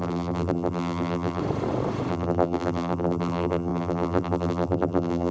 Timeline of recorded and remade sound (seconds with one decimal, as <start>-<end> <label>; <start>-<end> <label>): 0.0-1.4 remade; 1.4-2.1 recorded; 2.1-5.3 remade

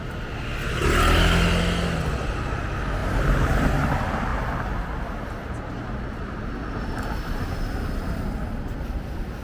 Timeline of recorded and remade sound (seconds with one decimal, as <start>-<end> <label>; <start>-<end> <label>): 0.0-9.4 recorded

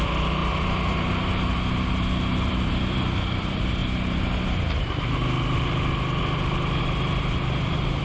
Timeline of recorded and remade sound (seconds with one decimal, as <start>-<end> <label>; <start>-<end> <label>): 0.0-0.4 remade; 0.4-2.3 recorded; 2.3-3.8 remade; 3.8-6.8 recorded; 6.8-8.0 remade

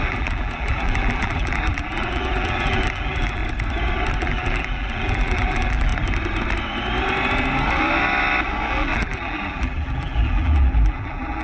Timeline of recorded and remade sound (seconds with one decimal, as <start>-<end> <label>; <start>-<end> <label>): 0.0-3.4 remade; 3.4-4.2 recorded; 4.2-5.9 remade; 5.9-8.7 recorded; 8.7-11.4 remade

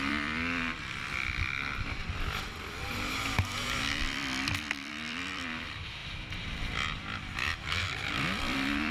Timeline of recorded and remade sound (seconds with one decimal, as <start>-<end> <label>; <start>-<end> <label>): 0.0-8.9 remade

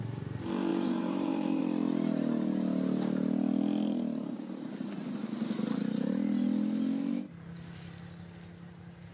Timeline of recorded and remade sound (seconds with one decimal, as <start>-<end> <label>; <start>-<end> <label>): 0.0-0.7 recorded; 0.7-1.6 remade; 1.6-9.1 recorded